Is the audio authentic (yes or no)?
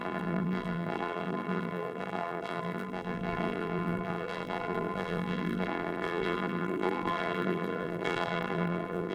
no